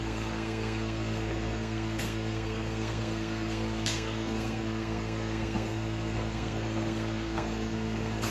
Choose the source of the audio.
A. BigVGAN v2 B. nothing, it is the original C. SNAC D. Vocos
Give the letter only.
C